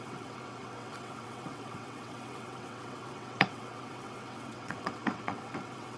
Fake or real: fake